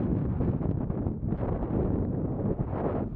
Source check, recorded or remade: recorded